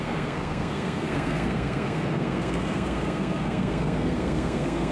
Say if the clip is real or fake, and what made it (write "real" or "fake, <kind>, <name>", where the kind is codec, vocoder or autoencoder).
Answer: fake, codec, SNAC